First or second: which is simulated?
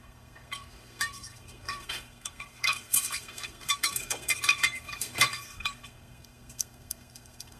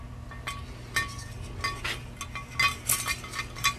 first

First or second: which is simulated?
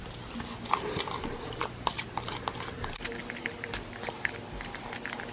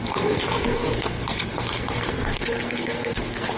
second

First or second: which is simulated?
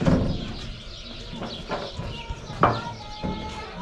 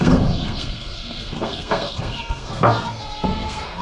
second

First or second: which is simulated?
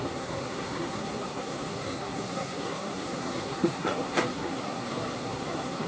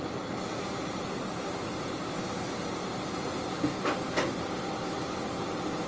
first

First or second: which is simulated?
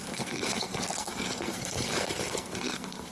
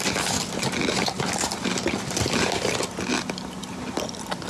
first